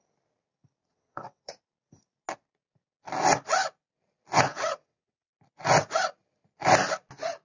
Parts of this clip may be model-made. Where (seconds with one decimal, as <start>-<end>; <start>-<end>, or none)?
0.8-1.5; 4.5-5.3